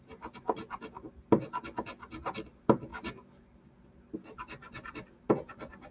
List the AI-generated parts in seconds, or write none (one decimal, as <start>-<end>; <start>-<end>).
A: none